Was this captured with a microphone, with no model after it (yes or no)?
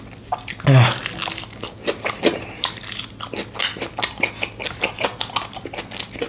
yes